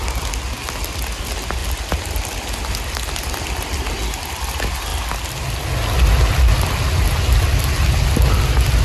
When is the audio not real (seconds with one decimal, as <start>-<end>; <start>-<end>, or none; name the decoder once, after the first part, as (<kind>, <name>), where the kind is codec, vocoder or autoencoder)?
none